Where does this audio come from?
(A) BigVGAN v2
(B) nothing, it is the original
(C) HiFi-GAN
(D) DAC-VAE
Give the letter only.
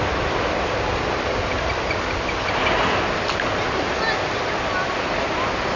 B